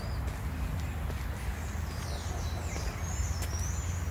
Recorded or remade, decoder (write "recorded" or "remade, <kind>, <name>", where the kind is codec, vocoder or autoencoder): recorded